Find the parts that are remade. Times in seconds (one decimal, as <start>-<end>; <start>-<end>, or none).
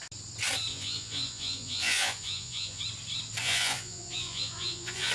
0.7-2.8; 3.4-5.1